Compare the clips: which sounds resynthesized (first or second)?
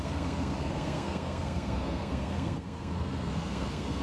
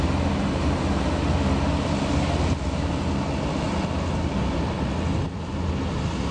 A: first